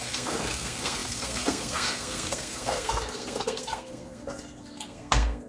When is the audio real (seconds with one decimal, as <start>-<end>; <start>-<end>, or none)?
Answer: none